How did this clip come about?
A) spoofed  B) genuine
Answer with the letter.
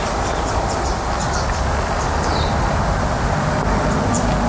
B